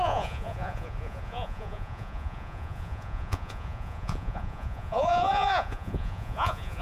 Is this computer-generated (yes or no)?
yes